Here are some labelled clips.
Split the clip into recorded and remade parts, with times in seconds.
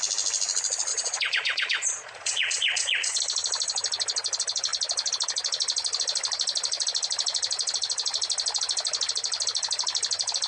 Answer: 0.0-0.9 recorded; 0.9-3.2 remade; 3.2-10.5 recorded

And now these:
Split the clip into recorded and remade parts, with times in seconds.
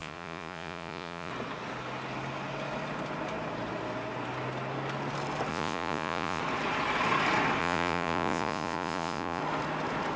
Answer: 0.0-1.3 remade; 1.3-5.5 recorded; 5.5-6.4 remade; 6.4-7.6 recorded; 7.6-9.4 remade; 9.4-10.2 recorded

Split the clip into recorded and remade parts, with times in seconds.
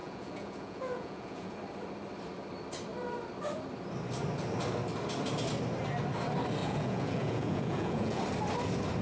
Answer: 0.0-1.6 remade; 1.6-6.6 recorded; 6.6-8.2 remade; 8.2-9.0 recorded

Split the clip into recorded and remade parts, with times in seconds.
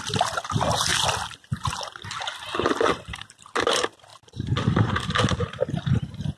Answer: 0.0-6.4 recorded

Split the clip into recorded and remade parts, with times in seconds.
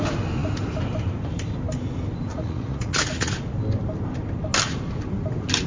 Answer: 0.0-2.3 recorded; 2.3-3.3 remade; 3.3-5.7 recorded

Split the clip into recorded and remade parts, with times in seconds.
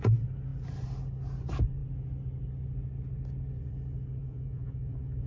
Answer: 0.0-4.2 recorded; 4.2-5.3 remade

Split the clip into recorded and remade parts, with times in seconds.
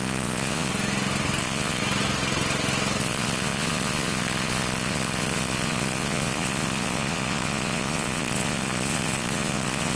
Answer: 0.0-0.7 remade; 0.7-1.4 recorded; 1.4-1.8 remade; 1.8-3.0 recorded; 3.0-10.0 remade